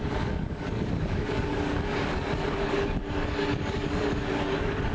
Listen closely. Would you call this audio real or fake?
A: fake